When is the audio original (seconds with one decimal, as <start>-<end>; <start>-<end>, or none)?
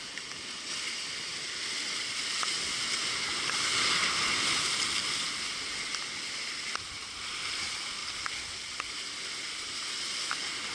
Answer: 0.0-10.7